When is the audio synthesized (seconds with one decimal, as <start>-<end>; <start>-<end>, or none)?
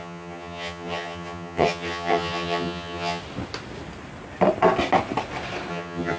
0.0-3.2; 5.7-6.2